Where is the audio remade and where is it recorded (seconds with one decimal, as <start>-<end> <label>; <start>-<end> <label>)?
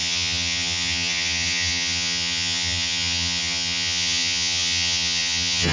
0.0-5.7 remade